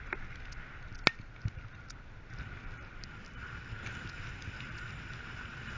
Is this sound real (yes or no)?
yes